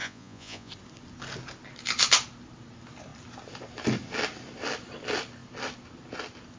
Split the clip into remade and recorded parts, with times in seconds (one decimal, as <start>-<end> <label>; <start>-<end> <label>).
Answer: 0.0-0.7 remade; 0.7-6.6 recorded